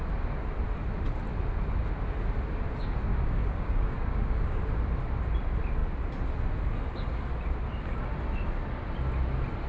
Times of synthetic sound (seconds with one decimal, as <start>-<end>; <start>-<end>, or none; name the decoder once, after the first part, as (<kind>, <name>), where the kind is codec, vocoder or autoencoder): 3.1-4.6 (codec, DAC)